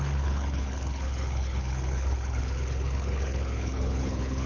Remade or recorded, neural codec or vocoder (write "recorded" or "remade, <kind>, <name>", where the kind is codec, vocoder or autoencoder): remade, codec, HILCodec